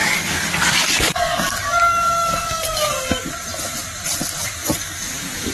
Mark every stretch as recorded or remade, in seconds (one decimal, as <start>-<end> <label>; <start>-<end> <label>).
0.0-3.3 remade; 3.3-4.6 recorded; 4.6-5.5 remade